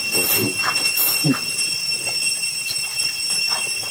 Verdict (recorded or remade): recorded